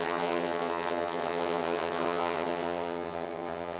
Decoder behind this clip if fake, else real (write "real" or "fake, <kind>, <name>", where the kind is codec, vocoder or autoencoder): fake, vocoder, HiFi-GAN